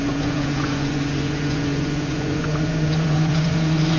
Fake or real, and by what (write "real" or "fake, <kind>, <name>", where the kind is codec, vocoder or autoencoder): fake, vocoder, Vocos